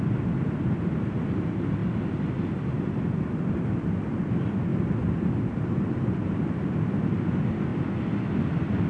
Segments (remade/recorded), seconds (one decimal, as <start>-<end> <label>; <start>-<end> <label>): 0.0-8.9 recorded